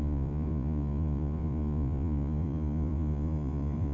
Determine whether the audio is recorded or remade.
remade